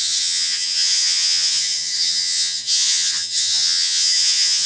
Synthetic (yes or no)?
yes